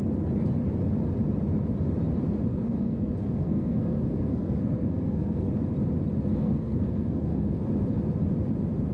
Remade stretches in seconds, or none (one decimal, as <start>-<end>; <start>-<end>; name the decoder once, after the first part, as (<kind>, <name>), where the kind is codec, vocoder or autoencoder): 2.5-5.5 (codec, SNAC); 6.3-7.6